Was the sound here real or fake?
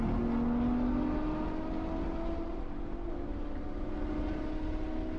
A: real